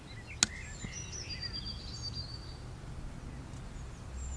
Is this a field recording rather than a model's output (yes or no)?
yes